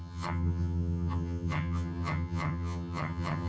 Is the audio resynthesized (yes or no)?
yes